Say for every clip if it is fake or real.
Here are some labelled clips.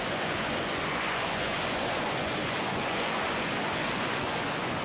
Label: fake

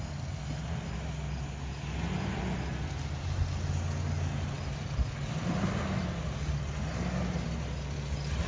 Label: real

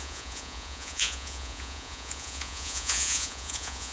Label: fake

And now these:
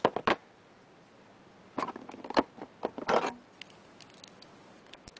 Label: real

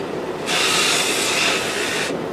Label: real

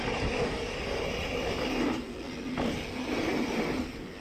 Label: real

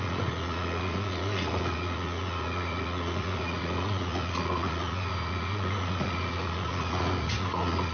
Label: fake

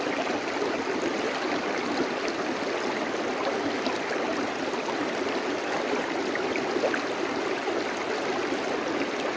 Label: real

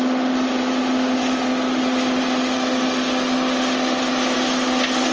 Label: real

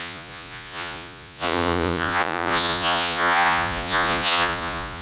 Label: fake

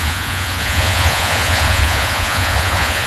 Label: fake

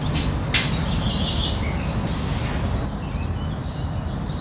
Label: real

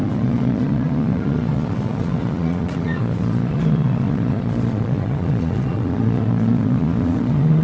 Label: fake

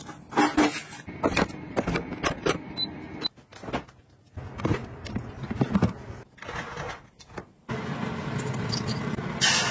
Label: real